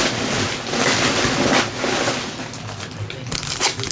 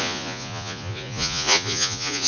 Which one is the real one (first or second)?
first